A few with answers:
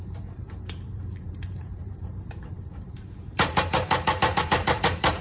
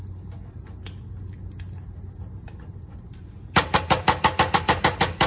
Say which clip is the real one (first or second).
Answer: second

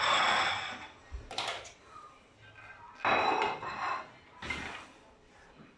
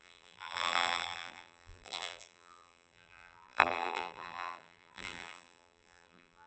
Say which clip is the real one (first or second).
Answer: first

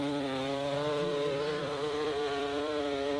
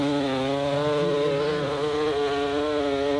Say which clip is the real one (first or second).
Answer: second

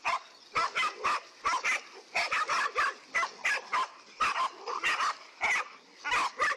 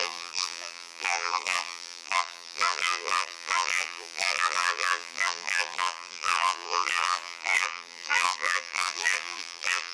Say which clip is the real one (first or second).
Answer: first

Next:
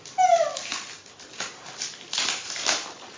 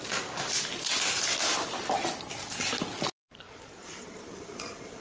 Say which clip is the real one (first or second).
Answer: second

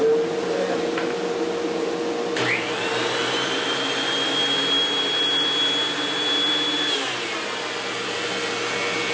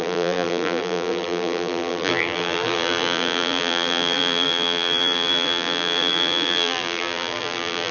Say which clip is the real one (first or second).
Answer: first